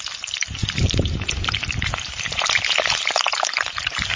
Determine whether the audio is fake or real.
fake